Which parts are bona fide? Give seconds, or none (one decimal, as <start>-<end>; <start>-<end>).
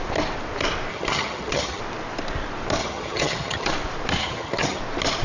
0.0-0.9; 1.8-2.8; 3.7-4.2; 4.8-5.2